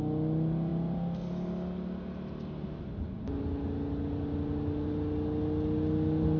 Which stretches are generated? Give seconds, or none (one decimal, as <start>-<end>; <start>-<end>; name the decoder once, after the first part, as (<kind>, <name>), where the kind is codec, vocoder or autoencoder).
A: none